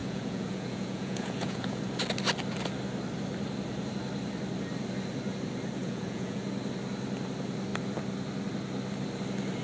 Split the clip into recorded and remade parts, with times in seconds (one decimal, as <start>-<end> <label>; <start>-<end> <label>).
0.0-1.8 remade; 1.8-5.8 recorded; 5.8-6.4 remade; 6.4-9.6 recorded